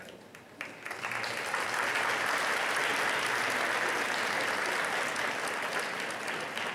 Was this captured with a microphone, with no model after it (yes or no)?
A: yes